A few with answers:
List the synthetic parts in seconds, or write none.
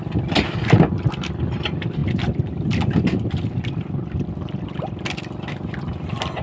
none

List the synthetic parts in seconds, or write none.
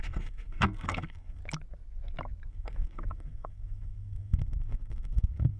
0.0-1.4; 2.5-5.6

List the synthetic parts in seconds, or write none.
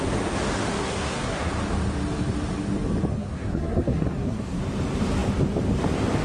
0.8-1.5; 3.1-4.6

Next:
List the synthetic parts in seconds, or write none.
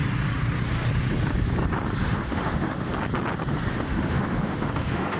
2.0-2.9; 3.7-5.2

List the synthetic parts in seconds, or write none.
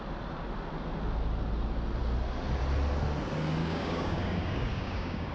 3.6-5.3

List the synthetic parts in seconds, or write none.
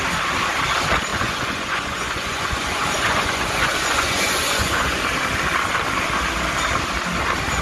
1.1-5.0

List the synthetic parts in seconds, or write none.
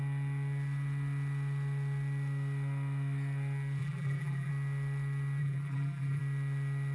3.8-4.5; 5.4-6.2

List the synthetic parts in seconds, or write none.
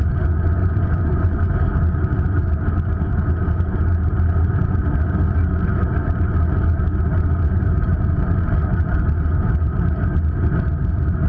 0.6-1.5